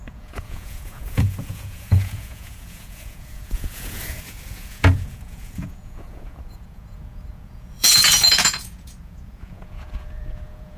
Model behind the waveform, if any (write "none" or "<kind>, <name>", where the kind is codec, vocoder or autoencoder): vocoder, Vocos